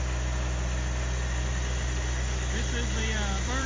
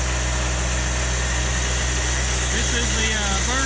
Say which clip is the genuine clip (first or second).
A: second